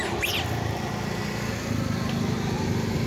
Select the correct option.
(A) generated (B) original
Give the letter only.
B